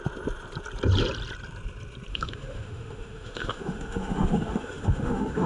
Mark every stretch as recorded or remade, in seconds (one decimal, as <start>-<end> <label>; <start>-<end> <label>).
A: 0.0-2.1 recorded; 2.1-5.5 remade